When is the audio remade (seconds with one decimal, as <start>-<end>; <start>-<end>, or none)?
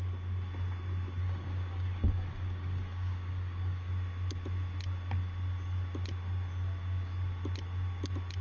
1.2-3.9